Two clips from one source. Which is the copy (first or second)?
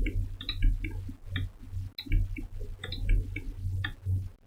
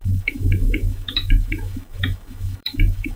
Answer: second